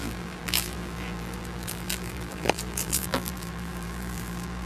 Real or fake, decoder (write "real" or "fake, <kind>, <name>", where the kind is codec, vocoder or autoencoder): fake, vocoder, BigVGAN v2